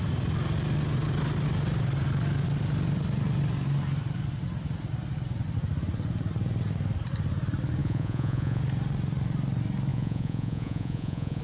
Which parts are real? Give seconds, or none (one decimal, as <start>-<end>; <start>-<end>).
0.0-7.8; 8.6-9.9